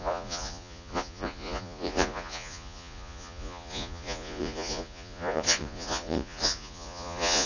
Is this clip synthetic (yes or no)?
yes